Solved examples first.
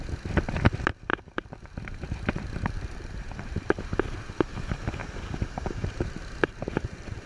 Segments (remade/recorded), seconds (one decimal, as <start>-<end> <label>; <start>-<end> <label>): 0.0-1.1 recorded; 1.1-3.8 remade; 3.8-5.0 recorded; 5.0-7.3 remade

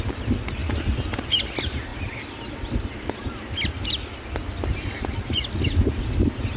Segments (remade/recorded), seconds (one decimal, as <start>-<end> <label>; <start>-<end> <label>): 0.0-6.6 recorded

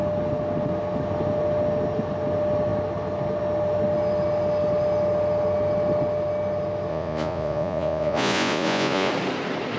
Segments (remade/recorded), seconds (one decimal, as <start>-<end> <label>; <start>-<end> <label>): 0.0-6.9 recorded; 6.9-9.1 remade; 9.1-9.8 recorded